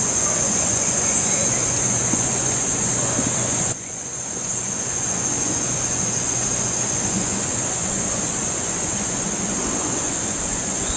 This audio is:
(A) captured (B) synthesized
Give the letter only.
B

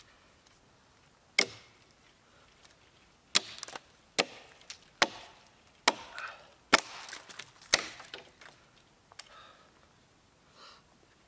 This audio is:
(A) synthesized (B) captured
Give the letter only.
B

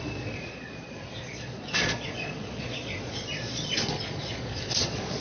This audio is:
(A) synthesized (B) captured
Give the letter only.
A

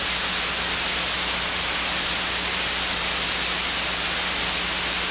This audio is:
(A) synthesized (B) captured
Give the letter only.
B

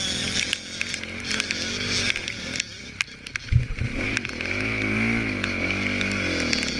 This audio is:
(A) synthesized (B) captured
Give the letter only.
B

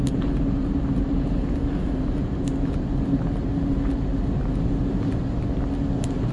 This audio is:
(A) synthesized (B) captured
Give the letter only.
B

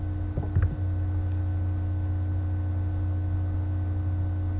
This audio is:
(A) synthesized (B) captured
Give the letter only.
B